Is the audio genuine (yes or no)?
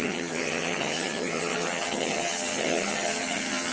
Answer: no